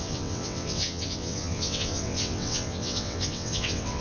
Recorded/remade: remade